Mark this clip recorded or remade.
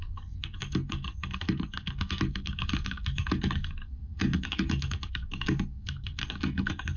remade